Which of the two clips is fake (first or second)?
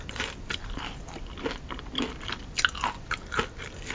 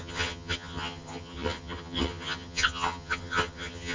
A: second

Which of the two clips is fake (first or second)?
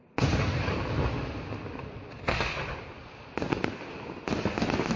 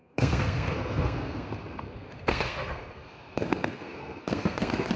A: second